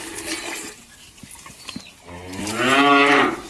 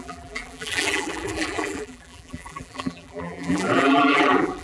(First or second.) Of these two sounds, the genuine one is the first